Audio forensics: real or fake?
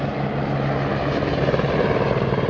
real